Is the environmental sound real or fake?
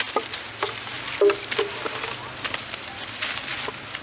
real